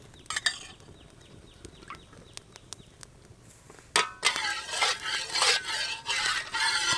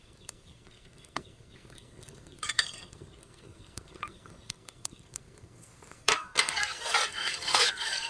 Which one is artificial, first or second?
second